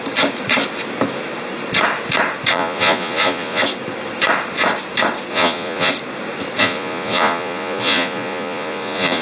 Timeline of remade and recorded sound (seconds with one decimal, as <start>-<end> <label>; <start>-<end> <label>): 0.0-2.5 recorded; 2.5-3.6 remade; 3.6-5.3 recorded; 5.3-5.9 remade; 5.9-6.6 recorded; 6.6-9.2 remade